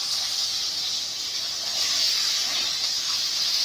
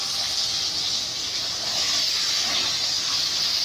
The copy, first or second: first